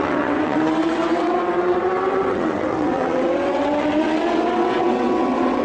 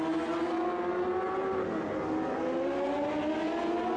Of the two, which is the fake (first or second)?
first